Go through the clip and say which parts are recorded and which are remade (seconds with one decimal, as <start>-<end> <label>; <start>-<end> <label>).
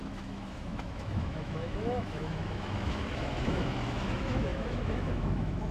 0.0-5.7 remade